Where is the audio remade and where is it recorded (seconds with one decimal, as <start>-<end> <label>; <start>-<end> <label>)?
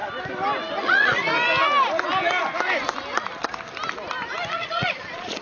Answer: 0.0-0.8 recorded; 0.8-1.3 remade; 1.3-4.5 recorded; 4.5-5.4 remade